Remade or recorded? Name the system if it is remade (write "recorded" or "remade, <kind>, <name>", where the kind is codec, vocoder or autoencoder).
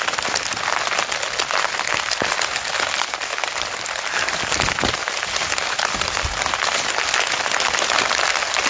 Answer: recorded